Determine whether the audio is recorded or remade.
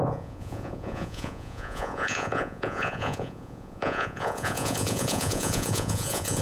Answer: remade